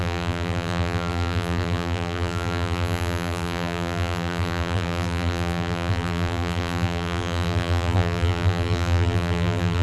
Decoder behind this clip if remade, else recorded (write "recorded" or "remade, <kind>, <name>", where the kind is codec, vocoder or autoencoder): remade, vocoder, BigVGAN v2